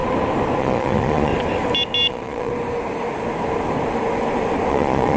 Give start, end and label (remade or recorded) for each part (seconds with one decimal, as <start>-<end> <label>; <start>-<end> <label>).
0.0-0.6 recorded; 0.6-1.3 remade; 1.3-2.1 recorded; 2.1-2.5 remade; 2.5-4.7 recorded; 4.7-5.2 remade